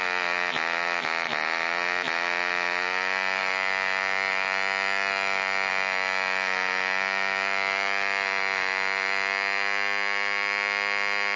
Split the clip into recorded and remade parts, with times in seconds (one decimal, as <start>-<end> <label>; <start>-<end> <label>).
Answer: 0.0-11.4 recorded